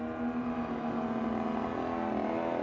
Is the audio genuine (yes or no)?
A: yes